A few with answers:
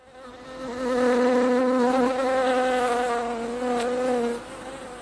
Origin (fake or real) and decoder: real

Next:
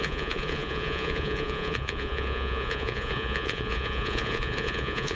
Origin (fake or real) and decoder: fake, vocoder, Vocos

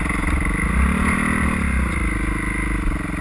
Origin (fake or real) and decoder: real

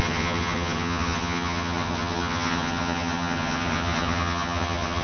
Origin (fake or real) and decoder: fake, vocoder, HiFi-GAN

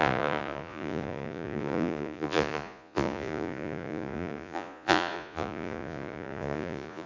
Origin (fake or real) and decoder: fake, vocoder, Vocos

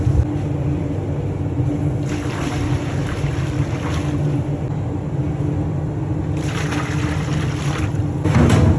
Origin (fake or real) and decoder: real